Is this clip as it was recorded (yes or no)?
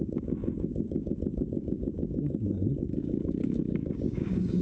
no